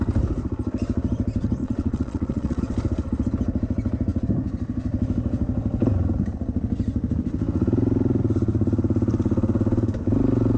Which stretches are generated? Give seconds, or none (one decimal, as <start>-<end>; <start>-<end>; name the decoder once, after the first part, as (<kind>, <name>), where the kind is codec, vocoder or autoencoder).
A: 1.6-2.6 (vocoder, Vocos)

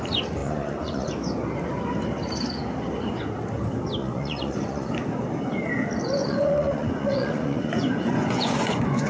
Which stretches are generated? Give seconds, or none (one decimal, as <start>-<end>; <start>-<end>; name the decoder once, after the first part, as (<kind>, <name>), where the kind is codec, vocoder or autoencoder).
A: 0.4-1.1 (vocoder, Vocos); 4.0-4.9; 6.2-9.1

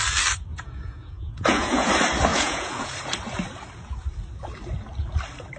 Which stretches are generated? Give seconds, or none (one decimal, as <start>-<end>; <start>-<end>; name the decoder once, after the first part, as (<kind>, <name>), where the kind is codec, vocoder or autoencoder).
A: 0.5-1.9 (vocoder, Vocos); 2.3-2.9

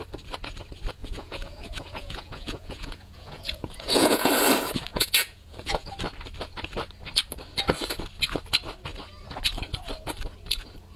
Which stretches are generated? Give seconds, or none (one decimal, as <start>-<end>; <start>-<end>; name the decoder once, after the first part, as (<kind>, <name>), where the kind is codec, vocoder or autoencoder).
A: 1.0-4.3 (vocoder, Vocos); 4.9-5.9